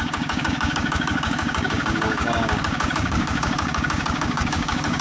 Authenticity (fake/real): fake